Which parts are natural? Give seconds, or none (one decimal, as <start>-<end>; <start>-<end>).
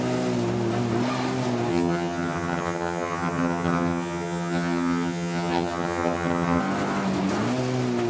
0.0-1.7; 6.6-8.1